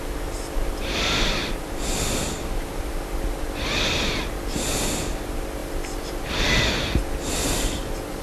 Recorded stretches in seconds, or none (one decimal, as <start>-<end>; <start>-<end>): 0.0-1.4; 2.8-8.2